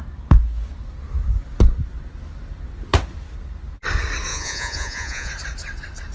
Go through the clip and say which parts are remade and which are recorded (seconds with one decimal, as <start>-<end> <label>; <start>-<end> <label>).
0.0-4.3 recorded; 4.3-5.3 remade; 5.3-6.1 recorded